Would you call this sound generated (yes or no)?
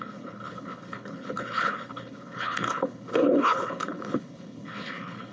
yes